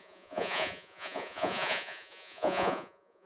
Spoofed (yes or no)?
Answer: yes